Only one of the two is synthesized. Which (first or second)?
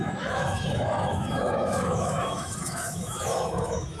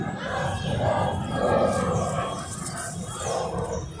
first